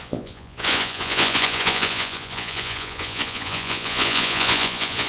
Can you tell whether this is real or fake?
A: fake